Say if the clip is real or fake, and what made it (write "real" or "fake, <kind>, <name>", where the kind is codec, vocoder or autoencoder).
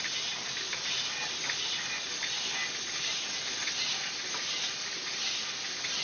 real